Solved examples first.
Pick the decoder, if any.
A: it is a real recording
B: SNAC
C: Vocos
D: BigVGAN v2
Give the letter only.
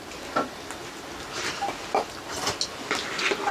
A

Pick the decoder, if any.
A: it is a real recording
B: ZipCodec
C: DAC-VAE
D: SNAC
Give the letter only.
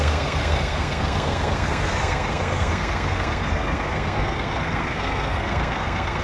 D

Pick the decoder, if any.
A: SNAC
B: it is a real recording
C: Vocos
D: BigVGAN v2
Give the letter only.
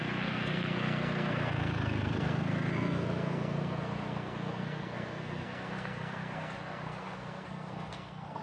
A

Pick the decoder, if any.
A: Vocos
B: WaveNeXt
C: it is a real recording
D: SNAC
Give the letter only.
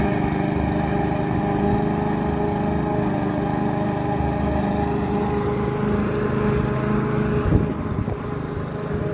C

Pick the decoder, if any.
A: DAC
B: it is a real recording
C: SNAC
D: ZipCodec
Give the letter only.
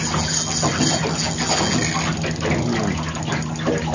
B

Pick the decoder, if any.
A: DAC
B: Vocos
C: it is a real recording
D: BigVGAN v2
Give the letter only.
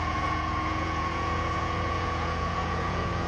B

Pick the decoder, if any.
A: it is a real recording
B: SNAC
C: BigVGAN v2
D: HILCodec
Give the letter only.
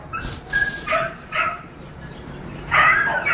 C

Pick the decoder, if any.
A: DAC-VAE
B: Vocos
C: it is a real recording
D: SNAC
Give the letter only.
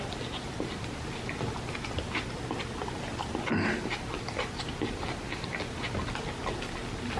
C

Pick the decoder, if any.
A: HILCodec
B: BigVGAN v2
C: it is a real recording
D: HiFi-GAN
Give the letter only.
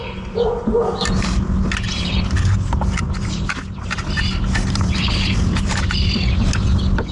C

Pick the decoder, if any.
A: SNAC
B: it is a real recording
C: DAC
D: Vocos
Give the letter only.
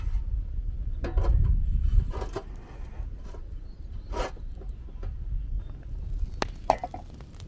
B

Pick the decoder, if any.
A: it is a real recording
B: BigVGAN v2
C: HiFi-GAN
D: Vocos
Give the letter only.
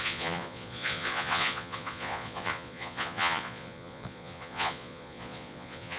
D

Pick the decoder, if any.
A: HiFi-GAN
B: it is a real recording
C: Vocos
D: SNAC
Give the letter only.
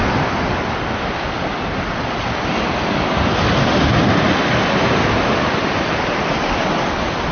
B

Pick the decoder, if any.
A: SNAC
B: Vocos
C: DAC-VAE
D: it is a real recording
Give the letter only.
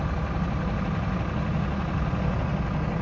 D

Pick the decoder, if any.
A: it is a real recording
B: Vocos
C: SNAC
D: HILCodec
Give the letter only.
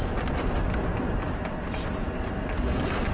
A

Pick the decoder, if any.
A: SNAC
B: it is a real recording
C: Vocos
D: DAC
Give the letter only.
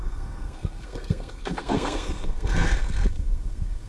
A